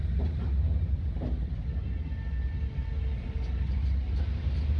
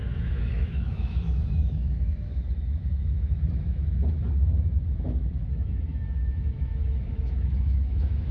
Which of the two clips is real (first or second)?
first